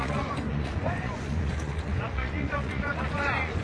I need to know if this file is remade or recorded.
remade